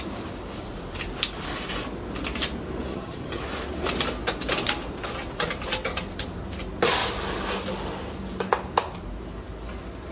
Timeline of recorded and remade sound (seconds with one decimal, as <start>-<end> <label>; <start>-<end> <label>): 0.0-2.9 recorded; 2.9-3.4 remade; 3.4-10.1 recorded